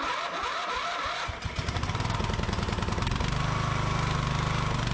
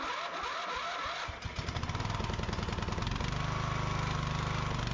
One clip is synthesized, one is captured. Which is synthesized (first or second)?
first